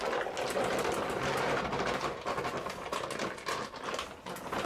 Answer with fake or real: real